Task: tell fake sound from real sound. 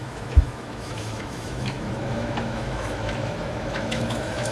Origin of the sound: fake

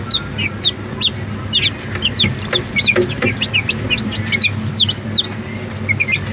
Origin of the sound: real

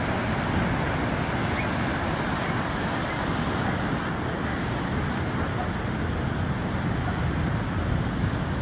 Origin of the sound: real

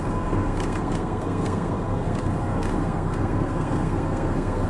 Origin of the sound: fake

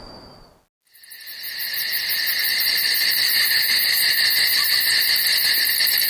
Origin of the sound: real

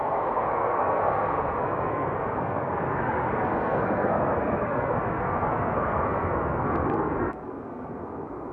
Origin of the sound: fake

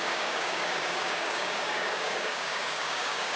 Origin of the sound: fake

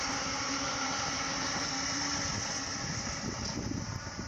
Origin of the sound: real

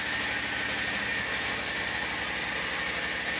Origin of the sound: real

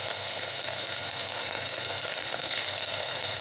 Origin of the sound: fake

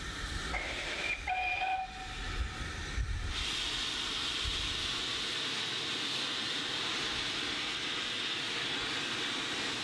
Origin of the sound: real